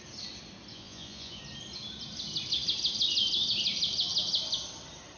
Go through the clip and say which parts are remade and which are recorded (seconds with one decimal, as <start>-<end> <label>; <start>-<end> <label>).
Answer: 0.0-0.7 recorded; 0.7-1.4 remade; 1.4-5.2 recorded